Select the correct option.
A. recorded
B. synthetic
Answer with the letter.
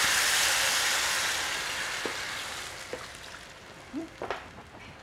A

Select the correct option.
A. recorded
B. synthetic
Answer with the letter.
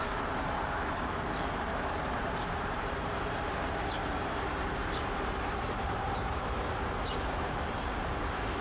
B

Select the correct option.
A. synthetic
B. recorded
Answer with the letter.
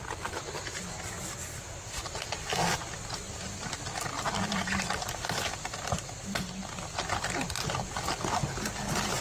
B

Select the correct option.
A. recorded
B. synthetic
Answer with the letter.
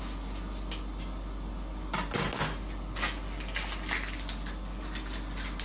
A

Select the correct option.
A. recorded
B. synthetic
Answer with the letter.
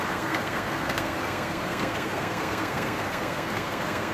B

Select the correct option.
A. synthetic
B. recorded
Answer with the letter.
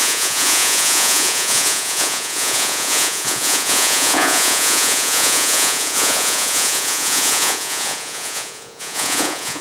A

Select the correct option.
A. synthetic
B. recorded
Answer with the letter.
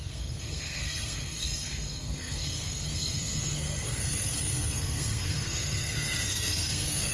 A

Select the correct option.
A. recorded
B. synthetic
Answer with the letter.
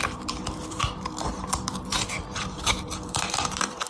B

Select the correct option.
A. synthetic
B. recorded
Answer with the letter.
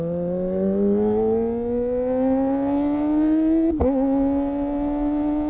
B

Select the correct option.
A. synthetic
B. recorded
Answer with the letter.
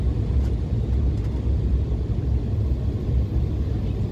B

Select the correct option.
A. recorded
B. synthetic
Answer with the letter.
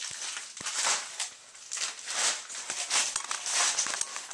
A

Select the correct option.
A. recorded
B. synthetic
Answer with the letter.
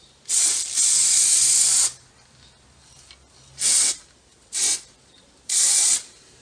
A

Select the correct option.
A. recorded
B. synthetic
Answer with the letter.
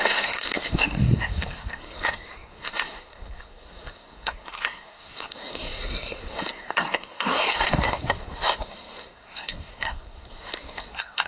B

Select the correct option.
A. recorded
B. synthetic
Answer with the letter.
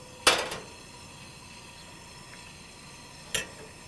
A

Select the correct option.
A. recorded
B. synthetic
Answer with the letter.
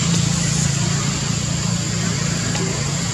A